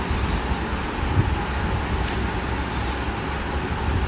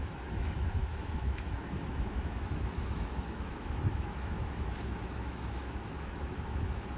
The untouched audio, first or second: first